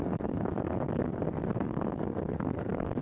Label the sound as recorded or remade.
remade